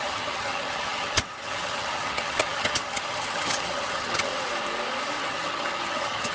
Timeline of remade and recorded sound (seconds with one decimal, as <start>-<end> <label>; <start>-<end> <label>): 0.0-4.3 remade; 4.3-5.2 recorded; 5.2-6.3 remade